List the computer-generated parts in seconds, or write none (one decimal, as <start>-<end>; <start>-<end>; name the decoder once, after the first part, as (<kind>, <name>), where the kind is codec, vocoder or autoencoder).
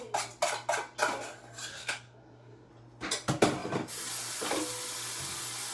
1.7-2.7 (codec, SNAC)